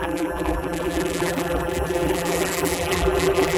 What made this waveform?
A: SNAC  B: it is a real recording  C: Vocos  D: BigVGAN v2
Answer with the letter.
D